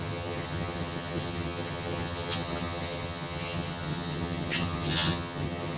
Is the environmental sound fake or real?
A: fake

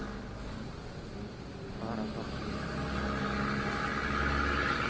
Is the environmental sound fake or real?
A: real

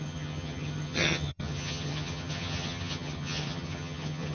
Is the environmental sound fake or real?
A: fake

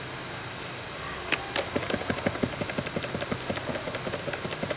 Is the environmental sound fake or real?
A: real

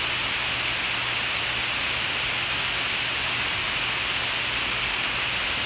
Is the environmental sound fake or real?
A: real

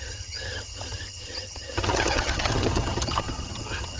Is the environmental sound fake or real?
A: fake